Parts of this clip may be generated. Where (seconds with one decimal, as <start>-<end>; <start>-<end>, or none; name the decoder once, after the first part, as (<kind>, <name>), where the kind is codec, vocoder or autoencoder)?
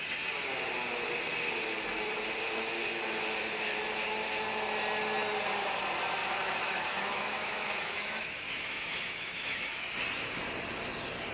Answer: 6.2-9.7 (autoencoder, DAC-VAE)